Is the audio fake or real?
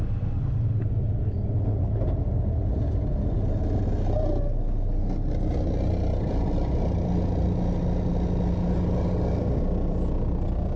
real